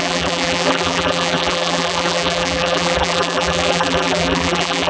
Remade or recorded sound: remade